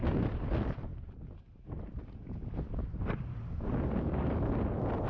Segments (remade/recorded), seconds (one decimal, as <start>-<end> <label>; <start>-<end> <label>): 0.0-5.1 recorded

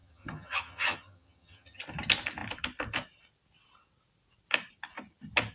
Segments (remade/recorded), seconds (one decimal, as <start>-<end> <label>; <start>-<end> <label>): 0.0-1.8 remade; 1.8-5.5 recorded

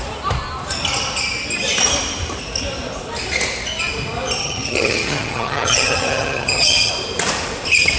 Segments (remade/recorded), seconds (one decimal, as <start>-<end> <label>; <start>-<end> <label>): 0.0-4.4 recorded; 4.4-6.9 remade; 6.9-8.0 recorded